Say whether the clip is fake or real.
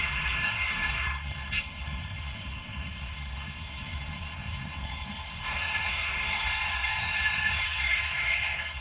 fake